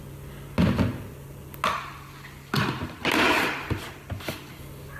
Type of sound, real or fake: real